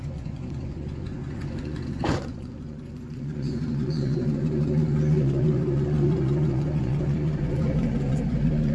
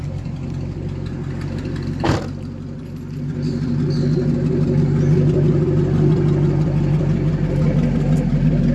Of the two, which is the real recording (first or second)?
second